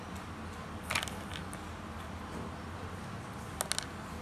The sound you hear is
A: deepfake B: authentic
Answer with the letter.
B